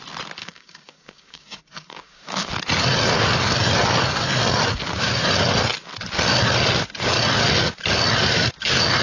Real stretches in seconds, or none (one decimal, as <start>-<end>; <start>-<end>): 0.0-0.4; 2.5-9.0